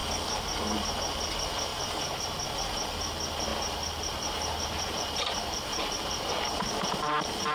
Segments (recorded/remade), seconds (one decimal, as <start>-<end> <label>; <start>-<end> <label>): 0.0-1.7 recorded; 1.7-2.5 remade; 2.5-3.5 recorded; 3.5-6.3 remade; 6.3-7.5 recorded